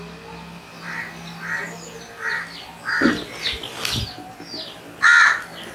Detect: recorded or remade recorded